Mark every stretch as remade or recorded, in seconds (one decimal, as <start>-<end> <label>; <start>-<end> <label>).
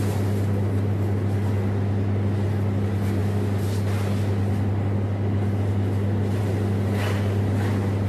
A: 0.0-8.1 recorded